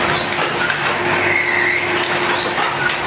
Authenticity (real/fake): real